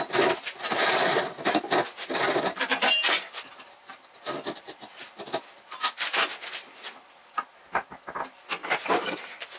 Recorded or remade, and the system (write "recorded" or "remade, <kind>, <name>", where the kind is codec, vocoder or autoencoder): remade, vocoder, BigVGAN v2